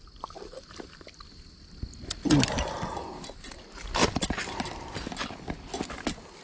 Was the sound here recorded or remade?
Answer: recorded